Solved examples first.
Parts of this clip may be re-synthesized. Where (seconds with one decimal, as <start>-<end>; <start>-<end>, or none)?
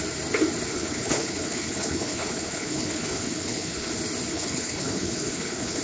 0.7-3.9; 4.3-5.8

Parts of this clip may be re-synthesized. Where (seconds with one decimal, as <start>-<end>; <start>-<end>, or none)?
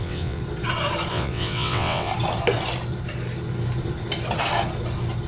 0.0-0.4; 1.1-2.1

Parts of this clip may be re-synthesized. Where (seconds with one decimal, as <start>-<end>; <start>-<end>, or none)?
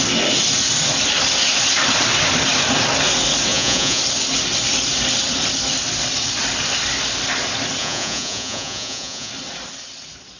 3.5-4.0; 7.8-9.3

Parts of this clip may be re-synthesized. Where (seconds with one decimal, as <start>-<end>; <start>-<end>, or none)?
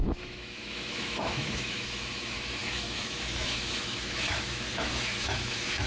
0.0-5.9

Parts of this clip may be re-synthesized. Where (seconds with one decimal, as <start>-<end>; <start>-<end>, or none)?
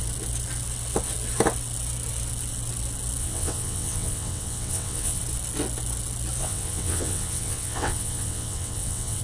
3.2-5.2; 6.4-9.2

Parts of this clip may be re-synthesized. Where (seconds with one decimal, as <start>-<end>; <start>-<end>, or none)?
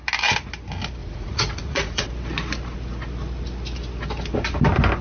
1.0-2.0